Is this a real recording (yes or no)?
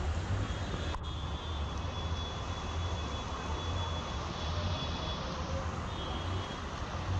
yes